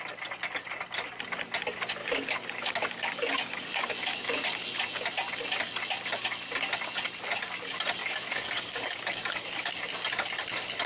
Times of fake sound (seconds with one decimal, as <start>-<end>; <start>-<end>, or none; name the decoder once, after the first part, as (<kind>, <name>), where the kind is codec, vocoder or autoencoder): 2.0-3.9 (codec, DAC); 8.0-9.8